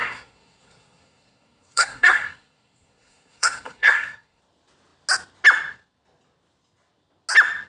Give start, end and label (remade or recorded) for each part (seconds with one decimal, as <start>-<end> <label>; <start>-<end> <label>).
0.0-4.4 remade; 4.4-7.7 recorded